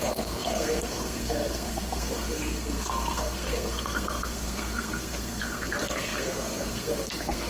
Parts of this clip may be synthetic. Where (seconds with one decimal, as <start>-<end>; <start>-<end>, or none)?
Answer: 0.0-7.5